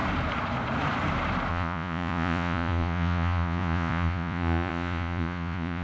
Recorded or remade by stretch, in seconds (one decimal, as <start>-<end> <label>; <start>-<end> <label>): 0.0-1.5 recorded; 1.5-5.8 remade